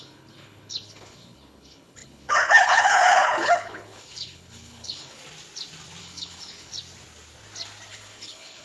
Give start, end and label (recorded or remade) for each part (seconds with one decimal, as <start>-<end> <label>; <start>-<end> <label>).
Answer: 0.0-5.2 remade; 5.2-6.0 recorded; 6.0-6.7 remade; 6.7-7.9 recorded; 7.9-8.6 remade